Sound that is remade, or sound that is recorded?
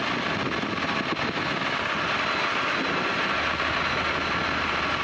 recorded